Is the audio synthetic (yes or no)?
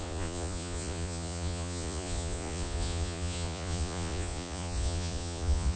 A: yes